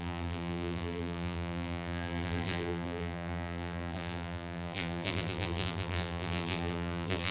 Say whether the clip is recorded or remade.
remade